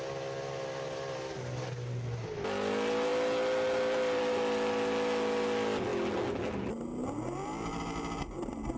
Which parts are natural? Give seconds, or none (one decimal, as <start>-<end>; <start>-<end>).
0.0-8.8